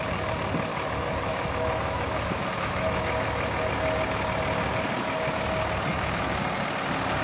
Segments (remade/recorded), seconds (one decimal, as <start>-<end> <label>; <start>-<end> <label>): 0.0-0.7 recorded; 0.7-3.7 remade; 3.7-5.9 recorded; 5.9-6.4 remade; 6.4-7.2 recorded

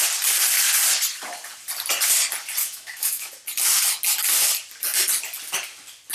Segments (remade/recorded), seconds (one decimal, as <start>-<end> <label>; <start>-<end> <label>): 0.0-2.6 recorded; 2.6-3.3 remade; 3.3-6.1 recorded

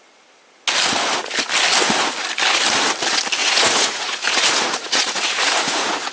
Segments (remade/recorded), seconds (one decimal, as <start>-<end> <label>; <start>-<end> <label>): 0.0-3.4 recorded; 3.4-6.1 remade

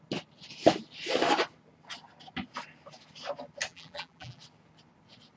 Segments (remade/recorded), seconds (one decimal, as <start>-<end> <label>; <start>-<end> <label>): 0.0-3.7 recorded; 3.7-4.4 remade; 4.4-5.4 recorded